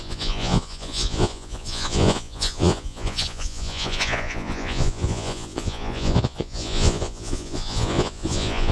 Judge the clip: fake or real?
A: fake